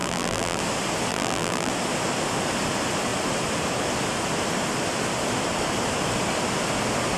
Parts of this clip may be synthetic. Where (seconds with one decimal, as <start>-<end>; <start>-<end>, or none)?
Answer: 0.0-0.6; 1.1-1.7